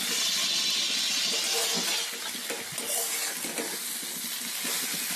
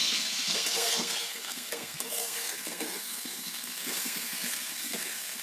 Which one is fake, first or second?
second